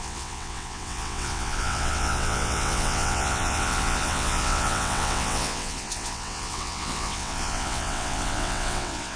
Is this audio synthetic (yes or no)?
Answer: yes